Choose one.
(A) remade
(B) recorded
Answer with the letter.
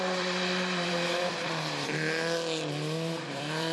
A